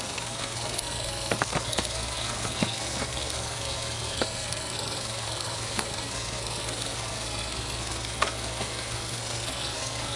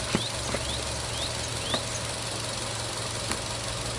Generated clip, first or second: first